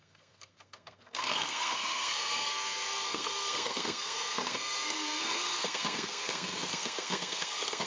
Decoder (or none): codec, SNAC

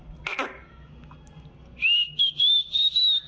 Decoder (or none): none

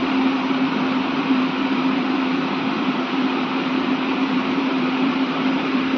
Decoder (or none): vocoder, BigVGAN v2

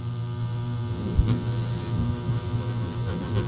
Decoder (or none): vocoder, BigVGAN v2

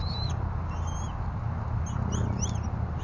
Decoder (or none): none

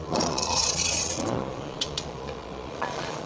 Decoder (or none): vocoder, Vocos